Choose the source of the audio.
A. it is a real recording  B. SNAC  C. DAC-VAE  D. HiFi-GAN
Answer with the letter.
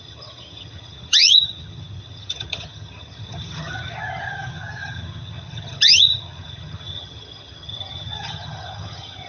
D